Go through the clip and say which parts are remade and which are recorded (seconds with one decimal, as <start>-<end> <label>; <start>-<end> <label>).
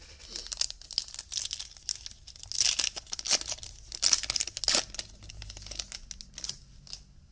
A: 0.0-7.3 recorded